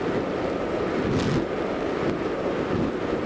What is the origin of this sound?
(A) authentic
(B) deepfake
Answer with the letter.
A